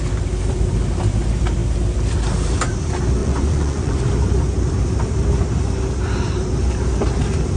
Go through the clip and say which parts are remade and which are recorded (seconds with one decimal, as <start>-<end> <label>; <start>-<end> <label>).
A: 0.0-3.2 recorded; 3.2-4.0 remade; 4.0-7.6 recorded